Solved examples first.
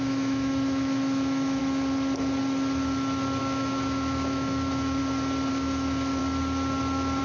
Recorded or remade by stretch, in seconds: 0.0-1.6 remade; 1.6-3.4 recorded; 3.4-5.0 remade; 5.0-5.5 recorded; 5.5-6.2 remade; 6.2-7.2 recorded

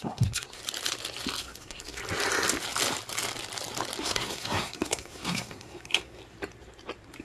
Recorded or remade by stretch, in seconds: 0.0-0.6 remade; 0.6-1.4 recorded; 1.4-2.0 remade; 2.0-4.0 recorded; 4.0-6.2 remade; 6.2-7.2 recorded

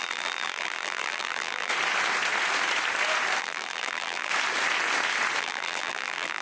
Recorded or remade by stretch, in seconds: 0.0-1.7 remade; 1.7-3.4 recorded; 3.4-4.3 remade; 4.3-5.4 recorded; 5.4-6.4 remade

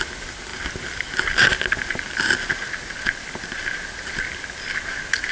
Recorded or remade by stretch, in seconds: 0.0-5.3 recorded

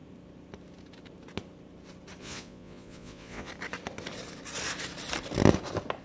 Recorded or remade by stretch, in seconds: 0.0-2.2 recorded; 2.2-3.5 remade; 3.5-6.0 recorded

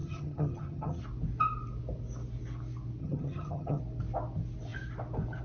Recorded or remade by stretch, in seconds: 0.0-1.0 remade; 1.0-3.0 recorded; 3.0-3.8 remade; 3.8-5.4 recorded